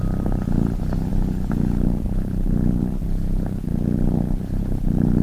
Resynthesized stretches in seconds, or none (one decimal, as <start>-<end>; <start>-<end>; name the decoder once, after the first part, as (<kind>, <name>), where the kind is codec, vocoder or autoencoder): 1.1-2.0 (codec, DAC)